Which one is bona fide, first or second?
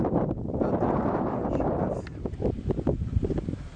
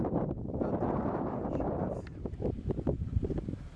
first